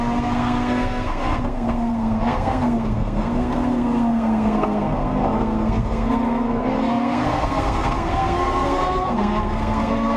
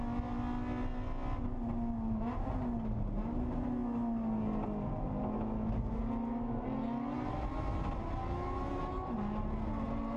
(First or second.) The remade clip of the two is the first